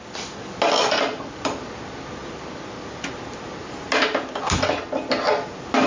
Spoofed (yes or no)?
no